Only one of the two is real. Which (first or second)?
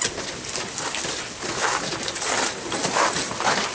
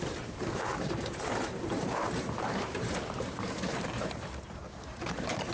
first